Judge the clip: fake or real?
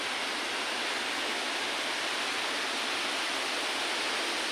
real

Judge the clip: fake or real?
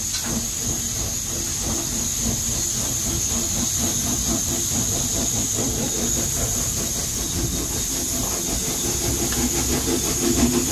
real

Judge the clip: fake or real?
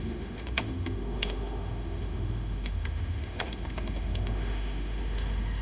fake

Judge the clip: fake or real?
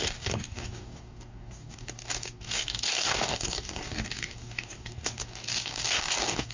fake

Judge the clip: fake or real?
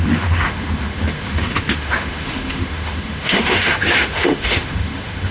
fake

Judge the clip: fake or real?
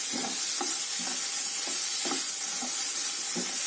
real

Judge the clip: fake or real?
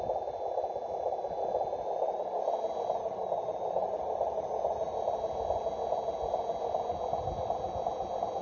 real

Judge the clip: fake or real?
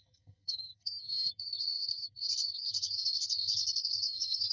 fake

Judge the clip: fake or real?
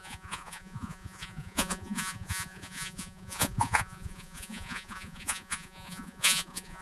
fake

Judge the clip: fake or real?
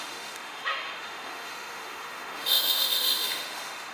fake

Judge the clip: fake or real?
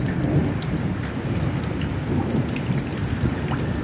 real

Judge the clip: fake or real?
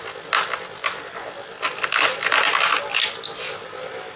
real